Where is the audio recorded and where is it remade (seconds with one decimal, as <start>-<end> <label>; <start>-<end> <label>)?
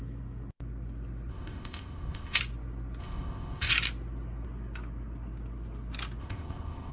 0.0-1.3 recorded; 1.3-2.4 remade; 2.4-3.0 recorded; 3.0-3.7 remade; 3.7-6.2 recorded; 6.2-6.9 remade